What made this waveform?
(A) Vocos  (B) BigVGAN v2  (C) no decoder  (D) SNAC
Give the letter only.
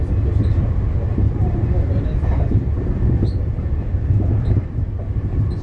C